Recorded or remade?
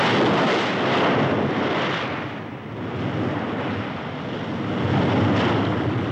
recorded